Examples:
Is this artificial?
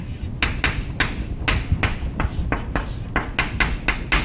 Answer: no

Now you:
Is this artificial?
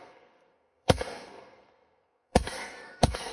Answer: yes